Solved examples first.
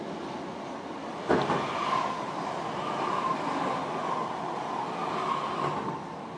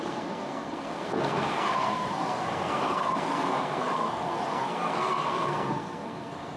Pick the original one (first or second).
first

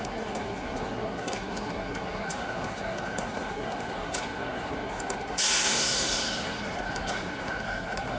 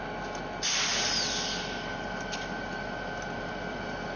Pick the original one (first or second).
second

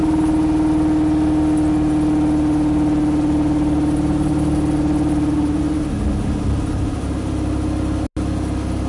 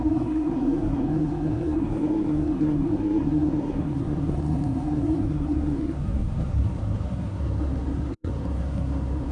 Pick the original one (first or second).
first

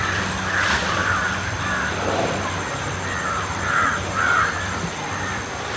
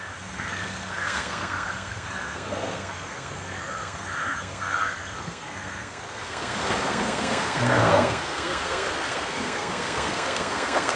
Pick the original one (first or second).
first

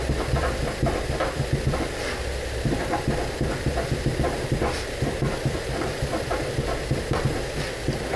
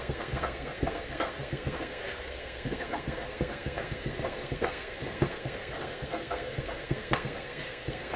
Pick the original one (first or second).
first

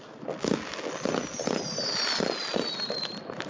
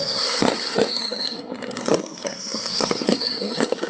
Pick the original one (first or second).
first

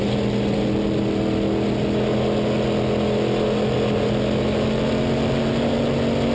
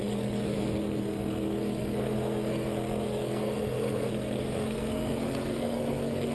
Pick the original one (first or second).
first